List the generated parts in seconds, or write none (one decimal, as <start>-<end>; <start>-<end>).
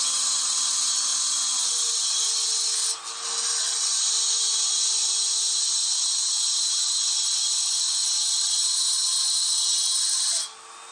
none